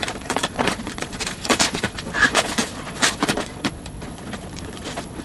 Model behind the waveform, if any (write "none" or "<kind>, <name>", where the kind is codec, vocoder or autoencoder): vocoder, Vocos